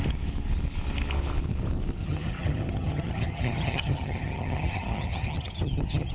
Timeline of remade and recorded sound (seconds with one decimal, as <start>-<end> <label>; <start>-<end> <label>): 0.0-2.0 recorded; 2.0-6.1 remade